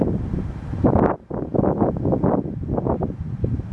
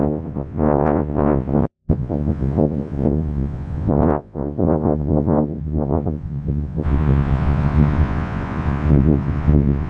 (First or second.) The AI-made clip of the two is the second